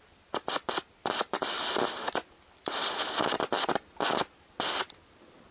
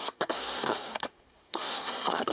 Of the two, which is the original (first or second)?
first